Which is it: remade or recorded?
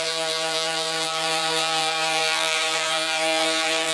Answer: remade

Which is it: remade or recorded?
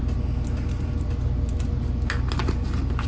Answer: recorded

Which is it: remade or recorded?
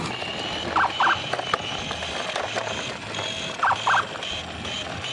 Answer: recorded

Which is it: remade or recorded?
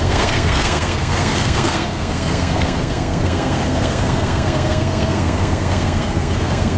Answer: remade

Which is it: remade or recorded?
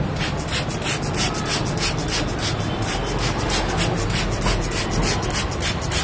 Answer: recorded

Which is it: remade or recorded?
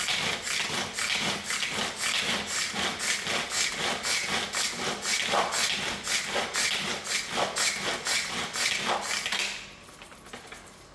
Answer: recorded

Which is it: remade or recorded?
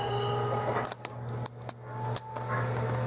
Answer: recorded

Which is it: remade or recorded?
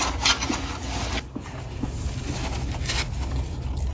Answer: recorded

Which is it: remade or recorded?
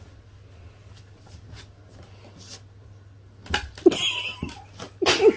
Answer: recorded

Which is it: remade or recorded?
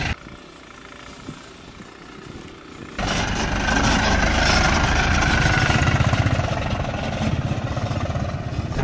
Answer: recorded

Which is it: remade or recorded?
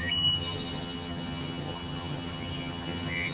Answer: remade